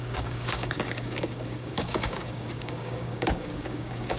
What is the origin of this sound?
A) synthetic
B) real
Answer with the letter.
A